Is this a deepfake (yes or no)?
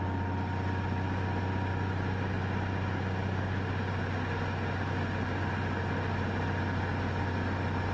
no